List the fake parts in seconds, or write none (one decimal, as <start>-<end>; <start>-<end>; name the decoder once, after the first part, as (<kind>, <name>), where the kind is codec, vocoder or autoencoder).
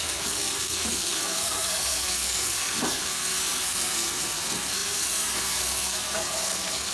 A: 0.0-6.9 (codec, SNAC)